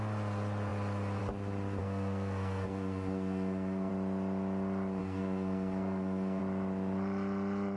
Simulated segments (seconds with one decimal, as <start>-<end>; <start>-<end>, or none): 1.8-3.9; 5.0-6.4